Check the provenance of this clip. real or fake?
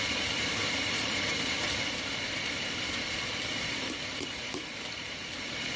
fake